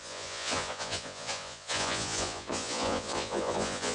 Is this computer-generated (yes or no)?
yes